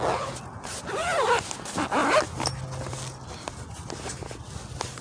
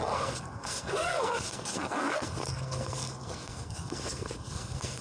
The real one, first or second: first